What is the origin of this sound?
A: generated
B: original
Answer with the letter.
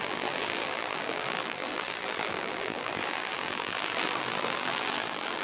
A